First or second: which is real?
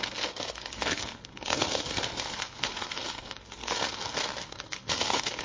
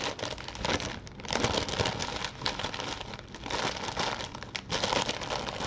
second